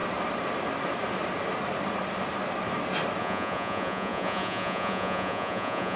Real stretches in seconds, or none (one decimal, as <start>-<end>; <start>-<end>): 0.0-3.2